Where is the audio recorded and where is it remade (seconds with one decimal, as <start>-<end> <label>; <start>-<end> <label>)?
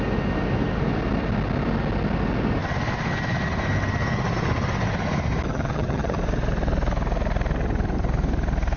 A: 0.0-5.5 recorded; 5.5-6.2 remade; 6.2-8.8 recorded